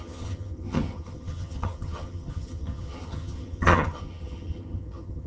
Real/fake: fake